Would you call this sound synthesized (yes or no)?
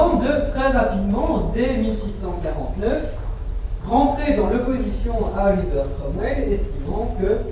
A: no